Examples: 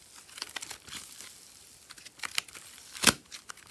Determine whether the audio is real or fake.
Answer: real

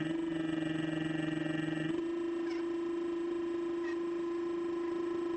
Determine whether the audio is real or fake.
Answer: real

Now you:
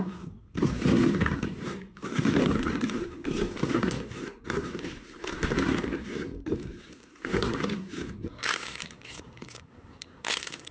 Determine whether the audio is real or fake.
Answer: fake